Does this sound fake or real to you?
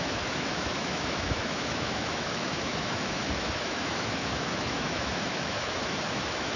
fake